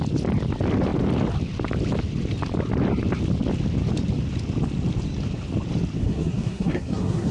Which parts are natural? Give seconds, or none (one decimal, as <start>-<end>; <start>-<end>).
0.0-6.0